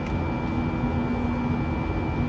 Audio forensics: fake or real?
real